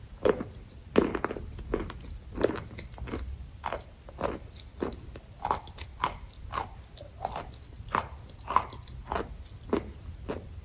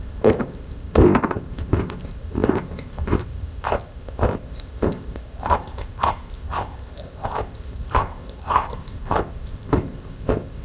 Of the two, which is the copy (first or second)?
second